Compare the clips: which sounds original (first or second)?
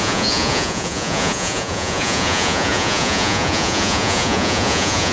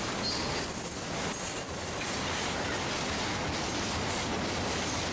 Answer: second